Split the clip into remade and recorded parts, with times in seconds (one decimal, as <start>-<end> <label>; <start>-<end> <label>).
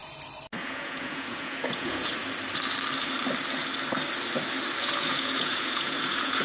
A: 0.0-0.6 recorded; 0.6-2.1 remade; 2.1-4.8 recorded; 4.8-6.4 remade